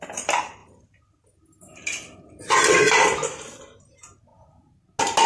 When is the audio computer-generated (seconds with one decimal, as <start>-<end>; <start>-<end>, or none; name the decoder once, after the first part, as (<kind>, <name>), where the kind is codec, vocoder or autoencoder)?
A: none